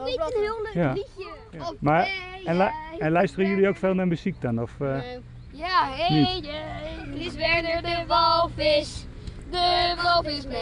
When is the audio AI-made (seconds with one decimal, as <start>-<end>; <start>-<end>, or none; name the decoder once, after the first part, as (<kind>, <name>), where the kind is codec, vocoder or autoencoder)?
5.6-6.4 (autoencoder, DAC-VAE)